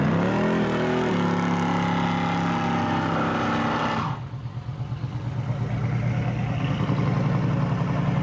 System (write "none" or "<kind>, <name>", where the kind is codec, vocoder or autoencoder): none